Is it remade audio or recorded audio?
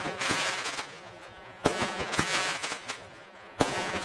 remade